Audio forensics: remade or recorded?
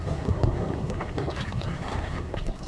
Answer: remade